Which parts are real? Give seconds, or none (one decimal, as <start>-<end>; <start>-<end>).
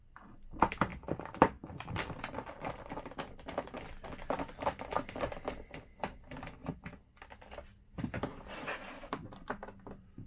0.0-10.3